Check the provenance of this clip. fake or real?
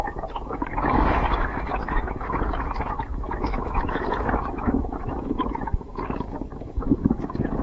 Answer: fake